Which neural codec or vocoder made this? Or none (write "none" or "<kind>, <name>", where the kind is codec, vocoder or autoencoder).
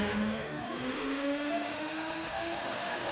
autoencoder, DAC-VAE